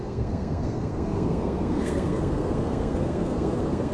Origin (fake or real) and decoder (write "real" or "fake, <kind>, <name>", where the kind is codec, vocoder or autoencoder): fake, codec, SNAC